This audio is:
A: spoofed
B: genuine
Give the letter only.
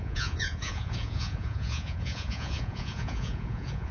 A